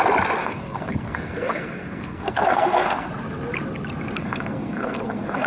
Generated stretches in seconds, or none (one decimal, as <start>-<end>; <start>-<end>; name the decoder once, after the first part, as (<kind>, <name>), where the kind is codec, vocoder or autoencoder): 0.4-3.1 (codec, SNAC); 4.2-5.5